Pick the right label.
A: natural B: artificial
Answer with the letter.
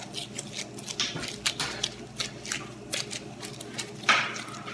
A